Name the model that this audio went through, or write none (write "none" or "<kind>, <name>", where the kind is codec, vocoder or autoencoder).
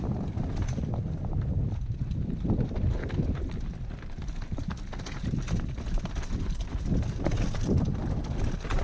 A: none